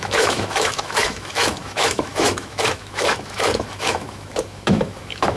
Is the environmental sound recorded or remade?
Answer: remade